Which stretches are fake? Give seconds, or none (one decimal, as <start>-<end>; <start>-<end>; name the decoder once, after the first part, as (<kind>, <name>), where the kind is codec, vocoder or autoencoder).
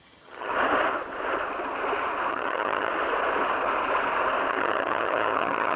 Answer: 0.0-0.5 (vocoder, HiFi-GAN); 2.3-2.9; 4.5-5.8